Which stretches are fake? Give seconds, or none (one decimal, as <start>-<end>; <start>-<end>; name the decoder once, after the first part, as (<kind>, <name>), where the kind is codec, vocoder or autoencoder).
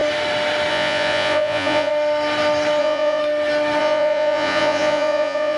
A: 0.7-1.9 (vocoder, Vocos); 2.8-3.2; 3.8-5.6